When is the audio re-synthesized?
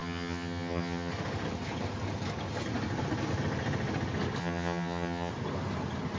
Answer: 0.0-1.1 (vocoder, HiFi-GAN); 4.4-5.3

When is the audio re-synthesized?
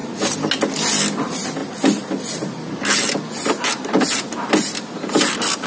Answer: none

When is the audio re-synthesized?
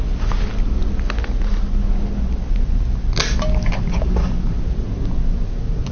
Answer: none